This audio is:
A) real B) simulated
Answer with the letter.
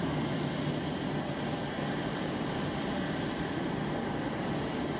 A